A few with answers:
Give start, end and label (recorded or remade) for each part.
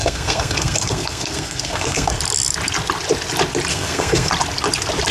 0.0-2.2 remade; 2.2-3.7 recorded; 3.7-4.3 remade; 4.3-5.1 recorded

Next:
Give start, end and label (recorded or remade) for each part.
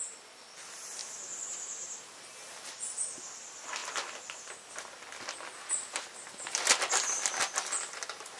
0.0-8.4 recorded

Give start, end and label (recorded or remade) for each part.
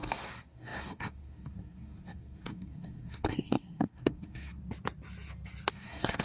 0.0-4.6 remade; 4.6-5.7 recorded; 5.7-6.2 remade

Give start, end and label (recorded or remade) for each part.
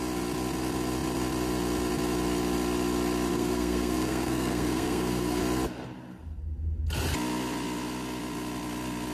0.0-3.3 recorded; 3.3-5.4 remade; 5.4-9.1 recorded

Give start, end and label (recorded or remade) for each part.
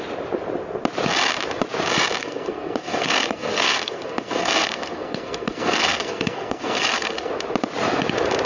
0.0-2.2 recorded; 2.2-7.3 remade; 7.3-8.5 recorded